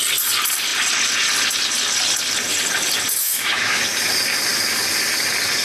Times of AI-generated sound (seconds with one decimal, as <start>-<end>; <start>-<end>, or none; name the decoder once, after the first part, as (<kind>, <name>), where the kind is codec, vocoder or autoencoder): 3.2-3.8 (autoencoder, DAC-VAE)